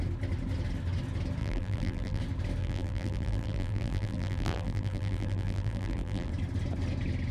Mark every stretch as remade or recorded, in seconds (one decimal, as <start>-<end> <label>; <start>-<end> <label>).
0.0-1.4 recorded; 1.4-2.2 remade; 2.2-2.6 recorded; 2.6-6.3 remade; 6.3-7.3 recorded

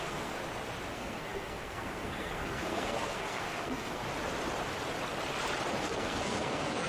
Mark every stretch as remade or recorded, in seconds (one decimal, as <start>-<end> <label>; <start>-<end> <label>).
0.0-0.4 remade; 0.4-0.9 recorded; 0.9-4.0 remade; 4.0-5.8 recorded; 5.8-6.9 remade

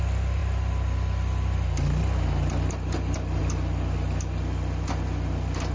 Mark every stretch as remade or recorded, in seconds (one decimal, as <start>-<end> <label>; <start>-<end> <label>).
0.0-5.7 recorded

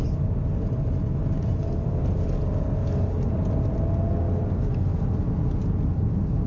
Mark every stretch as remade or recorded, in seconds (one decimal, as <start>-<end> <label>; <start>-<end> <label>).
0.0-6.5 recorded

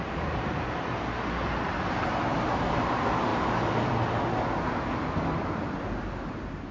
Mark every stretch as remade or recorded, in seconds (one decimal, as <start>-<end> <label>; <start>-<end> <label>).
0.0-3.3 recorded; 3.3-3.9 remade; 3.9-6.7 recorded